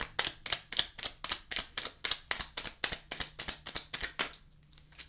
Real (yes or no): yes